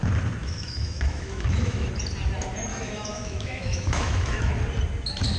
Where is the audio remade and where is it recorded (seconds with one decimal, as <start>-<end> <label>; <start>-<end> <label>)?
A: 0.0-0.4 recorded; 0.4-1.9 remade; 1.9-2.7 recorded; 2.7-4.5 remade; 4.5-5.4 recorded

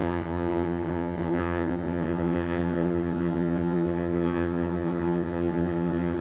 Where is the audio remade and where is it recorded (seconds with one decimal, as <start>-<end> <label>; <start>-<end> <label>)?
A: 0.0-6.2 remade

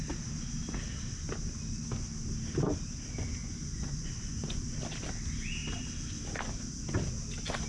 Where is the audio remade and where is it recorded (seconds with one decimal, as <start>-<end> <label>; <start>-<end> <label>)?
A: 0.0-3.4 recorded; 3.4-4.6 remade; 4.6-7.7 recorded